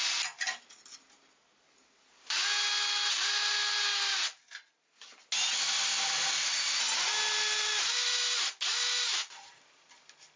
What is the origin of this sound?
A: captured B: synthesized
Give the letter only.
A